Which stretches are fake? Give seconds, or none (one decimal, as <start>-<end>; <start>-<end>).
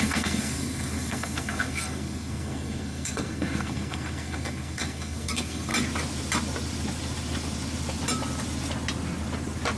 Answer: 0.0-5.7